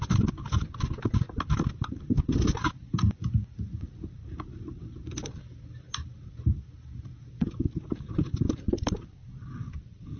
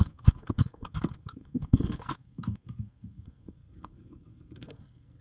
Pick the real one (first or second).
first